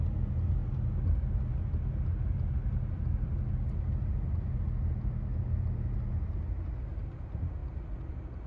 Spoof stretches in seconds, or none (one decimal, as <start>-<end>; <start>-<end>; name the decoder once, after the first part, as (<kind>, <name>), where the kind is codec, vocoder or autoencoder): none